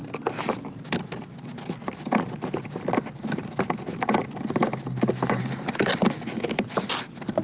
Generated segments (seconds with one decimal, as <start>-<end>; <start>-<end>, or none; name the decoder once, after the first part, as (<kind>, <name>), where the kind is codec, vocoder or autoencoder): 4.6-5.4 (vocoder, BigVGAN v2)